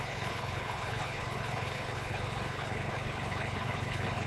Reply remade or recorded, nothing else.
remade